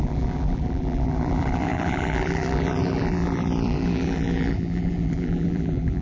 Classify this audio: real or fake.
fake